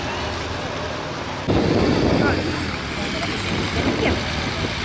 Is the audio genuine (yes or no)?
yes